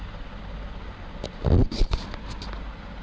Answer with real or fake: real